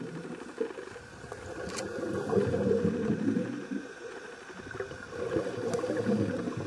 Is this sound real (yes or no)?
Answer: yes